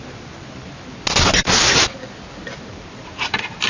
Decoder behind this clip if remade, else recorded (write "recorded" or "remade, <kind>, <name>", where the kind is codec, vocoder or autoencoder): recorded